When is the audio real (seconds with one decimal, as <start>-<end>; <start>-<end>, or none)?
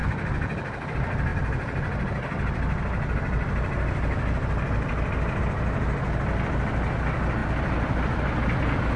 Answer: 0.0-9.0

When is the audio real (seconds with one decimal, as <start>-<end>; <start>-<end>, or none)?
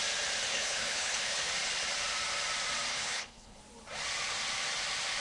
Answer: 0.0-0.5; 1.5-2.9; 3.6-5.2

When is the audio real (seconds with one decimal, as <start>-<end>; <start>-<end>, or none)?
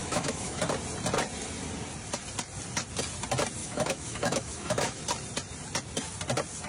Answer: 0.6-3.6; 5.0-6.7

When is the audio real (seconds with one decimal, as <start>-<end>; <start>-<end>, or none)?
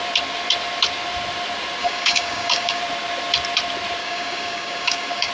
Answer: 0.0-1.8; 2.8-4.0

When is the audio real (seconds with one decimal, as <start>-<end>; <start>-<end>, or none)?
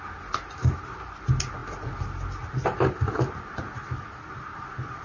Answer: 0.0-5.0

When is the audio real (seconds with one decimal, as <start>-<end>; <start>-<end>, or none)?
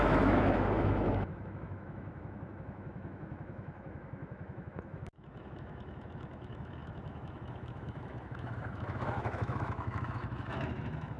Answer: none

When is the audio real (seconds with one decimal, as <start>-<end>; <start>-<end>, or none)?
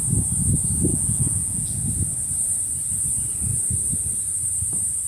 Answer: 0.0-0.9; 1.7-5.1